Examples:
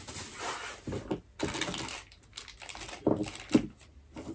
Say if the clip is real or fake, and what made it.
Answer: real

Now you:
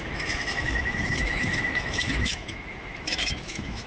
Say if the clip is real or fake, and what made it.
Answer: fake, autoencoder, DAC-VAE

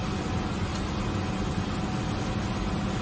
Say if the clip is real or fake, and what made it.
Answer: real